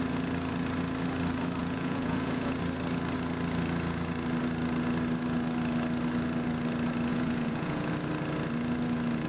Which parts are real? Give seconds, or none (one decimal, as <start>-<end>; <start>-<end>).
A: 0.0-1.6; 2.6-7.1; 7.9-9.3